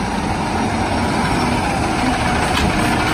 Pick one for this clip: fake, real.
real